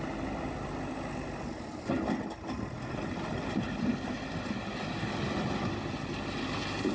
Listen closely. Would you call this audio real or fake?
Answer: real